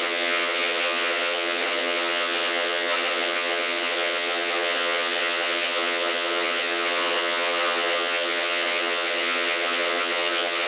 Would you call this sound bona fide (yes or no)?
no